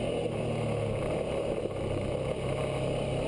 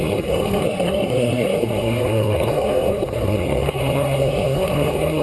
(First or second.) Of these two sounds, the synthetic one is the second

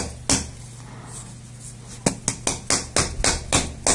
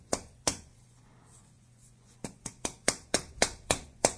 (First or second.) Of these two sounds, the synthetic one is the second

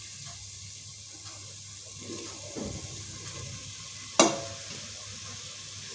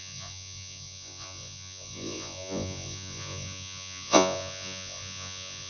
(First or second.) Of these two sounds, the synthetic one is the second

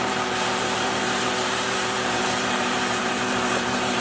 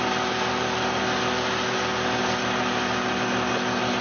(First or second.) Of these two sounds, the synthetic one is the first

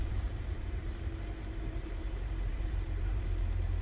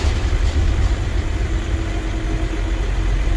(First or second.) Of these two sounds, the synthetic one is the first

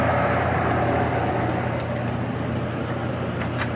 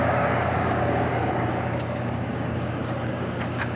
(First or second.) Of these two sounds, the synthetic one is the second